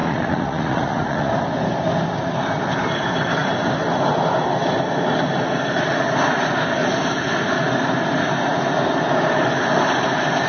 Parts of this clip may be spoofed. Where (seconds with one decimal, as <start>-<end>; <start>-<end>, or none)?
0.0-1.3